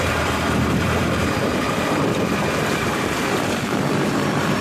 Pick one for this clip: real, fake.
fake